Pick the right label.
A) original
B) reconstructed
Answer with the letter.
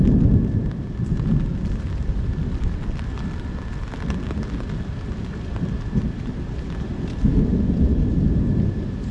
A